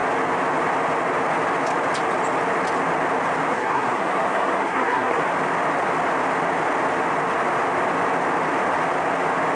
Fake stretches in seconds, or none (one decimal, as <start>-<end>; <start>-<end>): 3.5-5.2

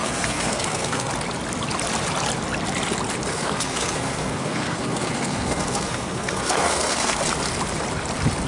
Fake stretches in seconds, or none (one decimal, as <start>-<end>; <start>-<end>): 0.0-1.1; 3.3-7.2

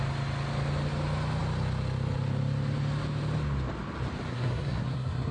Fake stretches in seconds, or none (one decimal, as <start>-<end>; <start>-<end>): 4.3-5.3

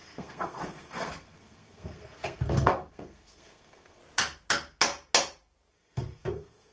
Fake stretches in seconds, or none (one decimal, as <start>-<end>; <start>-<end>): 0.0-4.0; 5.7-6.7

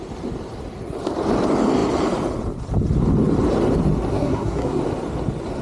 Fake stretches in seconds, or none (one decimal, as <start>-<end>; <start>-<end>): 4.1-4.8

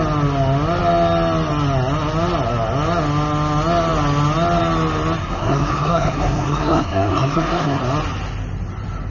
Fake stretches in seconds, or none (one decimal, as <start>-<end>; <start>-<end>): 5.2-7.8